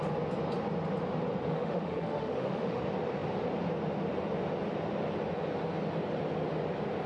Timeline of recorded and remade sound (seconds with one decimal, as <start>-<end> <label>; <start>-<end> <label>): 0.0-1.5 recorded; 1.5-2.8 remade; 2.8-7.1 recorded